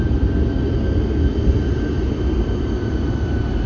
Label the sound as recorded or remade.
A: recorded